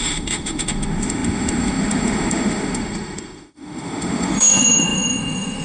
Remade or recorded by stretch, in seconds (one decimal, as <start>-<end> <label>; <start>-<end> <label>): 0.0-5.6 remade